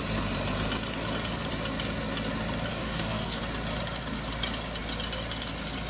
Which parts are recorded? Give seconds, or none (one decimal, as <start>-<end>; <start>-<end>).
0.0-2.7; 3.4-5.9